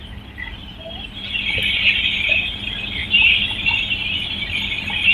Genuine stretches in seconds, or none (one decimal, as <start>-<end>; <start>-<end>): 0.0-0.6; 1.3-3.0; 3.9-5.1